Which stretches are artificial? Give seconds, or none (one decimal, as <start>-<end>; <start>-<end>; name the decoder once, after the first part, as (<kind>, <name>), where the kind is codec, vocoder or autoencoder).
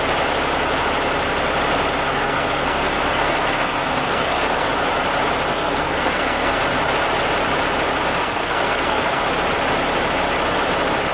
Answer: 2.1-4.7 (codec, SNAC); 5.5-6.6; 8.2-9.2